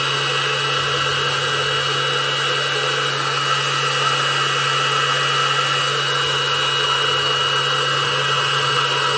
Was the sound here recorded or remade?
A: recorded